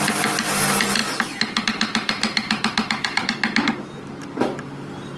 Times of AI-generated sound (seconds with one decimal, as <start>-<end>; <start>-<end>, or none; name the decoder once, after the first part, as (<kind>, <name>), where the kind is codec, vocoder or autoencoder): none